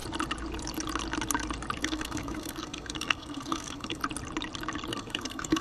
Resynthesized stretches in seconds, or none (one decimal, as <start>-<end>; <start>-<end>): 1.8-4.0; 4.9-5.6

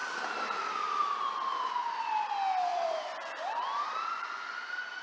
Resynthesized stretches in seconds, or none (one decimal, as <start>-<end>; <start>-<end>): 0.0-0.6; 1.0-1.6; 2.7-4.4

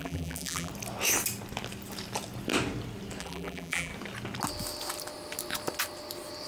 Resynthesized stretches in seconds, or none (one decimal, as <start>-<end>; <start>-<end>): 0.0-0.7; 3.2-3.9